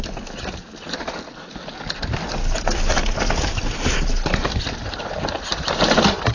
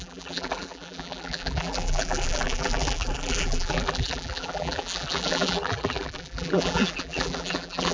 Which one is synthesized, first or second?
second